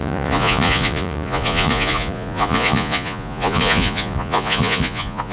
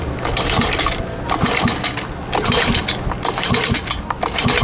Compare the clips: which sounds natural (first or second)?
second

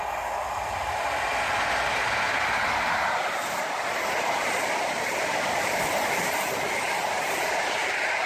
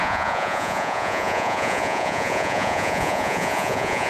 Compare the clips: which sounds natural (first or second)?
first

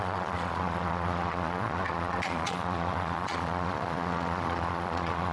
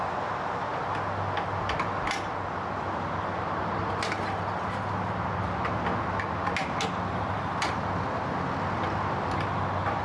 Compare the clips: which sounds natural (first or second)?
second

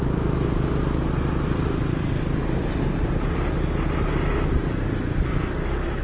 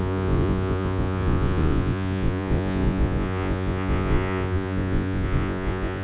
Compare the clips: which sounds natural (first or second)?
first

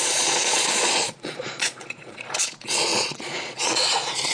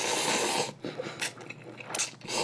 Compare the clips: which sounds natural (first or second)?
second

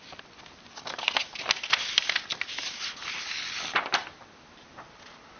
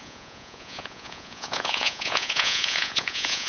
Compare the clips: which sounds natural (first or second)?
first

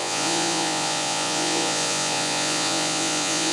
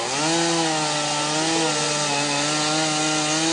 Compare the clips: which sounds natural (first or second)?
second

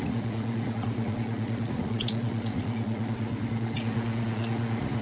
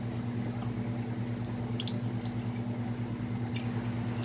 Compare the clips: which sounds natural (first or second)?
second